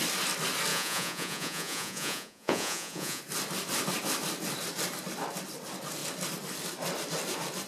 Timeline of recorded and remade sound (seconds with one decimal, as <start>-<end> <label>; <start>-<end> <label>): 0.0-0.7 recorded; 0.7-3.2 remade; 3.2-7.7 recorded